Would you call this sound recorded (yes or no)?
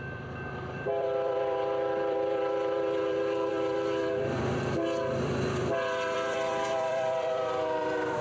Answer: no